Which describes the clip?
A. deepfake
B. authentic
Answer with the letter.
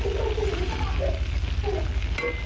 B